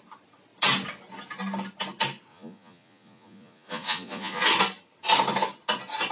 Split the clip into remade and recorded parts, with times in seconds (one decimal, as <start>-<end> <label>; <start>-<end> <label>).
0.0-2.3 recorded; 2.3-4.4 remade; 4.4-6.1 recorded